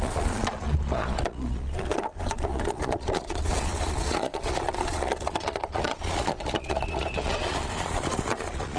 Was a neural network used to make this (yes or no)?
yes